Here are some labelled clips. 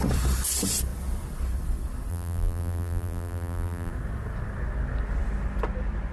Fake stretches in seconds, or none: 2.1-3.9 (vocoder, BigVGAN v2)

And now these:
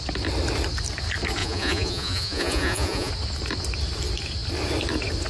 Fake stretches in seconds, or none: 1.4-3.1 (vocoder, Vocos)

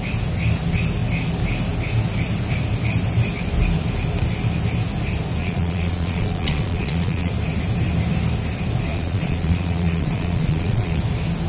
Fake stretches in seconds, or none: 5.4-7.3 (vocoder, Vocos); 8.9-11.0

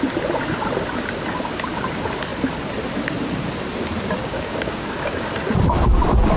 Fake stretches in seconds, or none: 4.2-5.3 (codec, DAC)

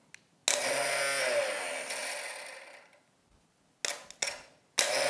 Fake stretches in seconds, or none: none

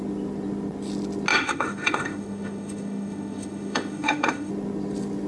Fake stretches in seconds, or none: 1.3-4.5 (autoencoder, DAC-VAE)

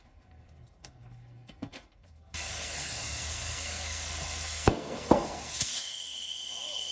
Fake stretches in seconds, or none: 0.0-6.9 (codec, SNAC)